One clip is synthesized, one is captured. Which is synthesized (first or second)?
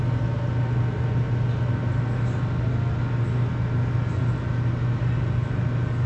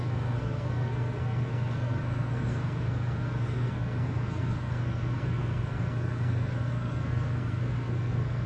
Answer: second